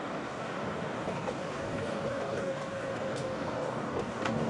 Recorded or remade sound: remade